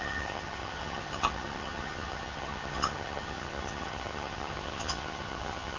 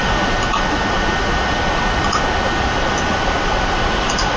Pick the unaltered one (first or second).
second